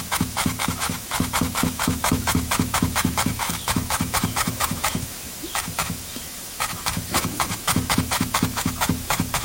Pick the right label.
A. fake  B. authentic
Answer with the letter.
A